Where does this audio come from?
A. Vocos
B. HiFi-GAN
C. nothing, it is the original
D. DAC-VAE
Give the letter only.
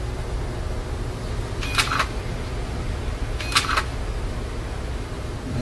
C